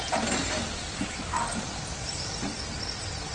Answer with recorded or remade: recorded